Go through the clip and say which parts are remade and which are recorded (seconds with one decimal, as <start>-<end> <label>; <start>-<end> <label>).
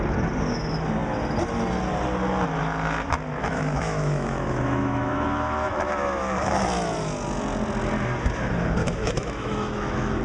0.0-3.4 recorded; 3.4-6.6 remade; 6.6-8.8 recorded; 8.8-10.2 remade